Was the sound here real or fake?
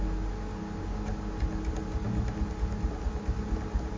real